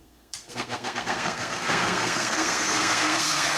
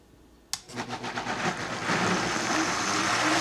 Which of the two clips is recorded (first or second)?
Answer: second